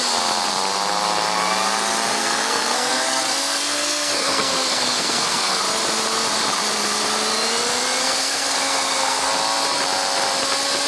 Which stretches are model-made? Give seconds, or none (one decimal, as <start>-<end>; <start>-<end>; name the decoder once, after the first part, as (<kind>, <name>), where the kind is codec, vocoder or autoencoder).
2.1-5.6 (codec, SNAC); 8.0-9.3